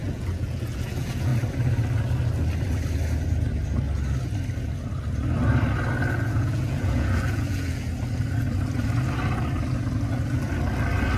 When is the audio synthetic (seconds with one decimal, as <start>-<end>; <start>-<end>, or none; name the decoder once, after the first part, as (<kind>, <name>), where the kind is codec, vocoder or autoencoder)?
0.0-1.3 (vocoder, Vocos); 6.1-7.9